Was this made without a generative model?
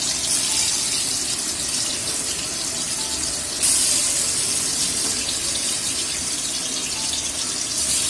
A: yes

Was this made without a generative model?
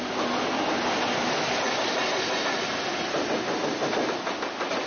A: yes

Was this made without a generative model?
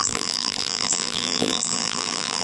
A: no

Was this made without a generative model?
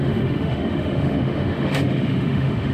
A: no